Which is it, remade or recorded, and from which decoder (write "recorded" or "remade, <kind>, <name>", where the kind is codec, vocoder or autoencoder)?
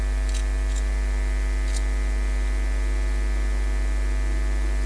recorded